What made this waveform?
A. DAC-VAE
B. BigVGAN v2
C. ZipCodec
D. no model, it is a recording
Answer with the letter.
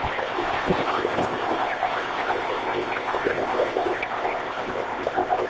C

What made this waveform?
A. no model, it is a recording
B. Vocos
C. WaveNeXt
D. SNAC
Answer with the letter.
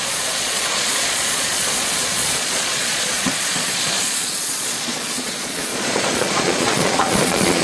B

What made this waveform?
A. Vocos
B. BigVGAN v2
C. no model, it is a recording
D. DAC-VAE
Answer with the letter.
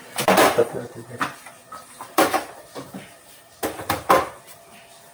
B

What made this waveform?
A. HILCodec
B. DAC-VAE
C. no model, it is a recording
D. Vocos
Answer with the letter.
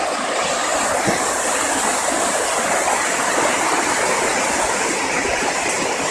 C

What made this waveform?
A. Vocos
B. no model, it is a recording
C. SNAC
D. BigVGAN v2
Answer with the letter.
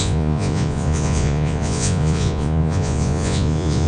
A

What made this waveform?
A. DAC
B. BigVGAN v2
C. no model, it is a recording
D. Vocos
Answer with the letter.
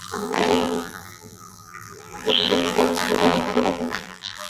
B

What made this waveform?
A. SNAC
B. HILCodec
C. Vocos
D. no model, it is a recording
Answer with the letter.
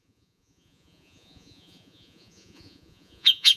C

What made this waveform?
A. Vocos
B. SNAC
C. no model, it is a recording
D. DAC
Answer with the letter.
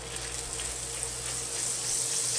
C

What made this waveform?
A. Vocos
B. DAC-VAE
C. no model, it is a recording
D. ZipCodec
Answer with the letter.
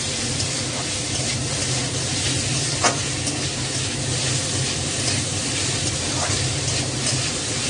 C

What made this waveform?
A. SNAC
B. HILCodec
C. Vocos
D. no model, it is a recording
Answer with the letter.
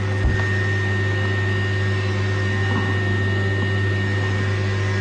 D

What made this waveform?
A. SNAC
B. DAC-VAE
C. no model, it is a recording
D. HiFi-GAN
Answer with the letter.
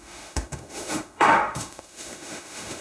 B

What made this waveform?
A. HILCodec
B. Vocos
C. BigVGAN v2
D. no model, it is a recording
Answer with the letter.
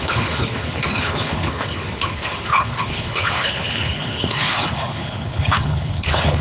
A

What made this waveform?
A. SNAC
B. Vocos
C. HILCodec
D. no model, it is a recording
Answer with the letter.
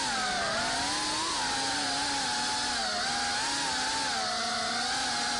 D